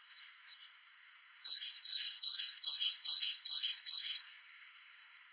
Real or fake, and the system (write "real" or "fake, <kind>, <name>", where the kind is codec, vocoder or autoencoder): fake, codec, SNAC